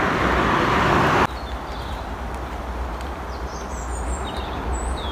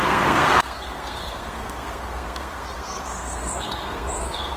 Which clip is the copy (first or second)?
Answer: second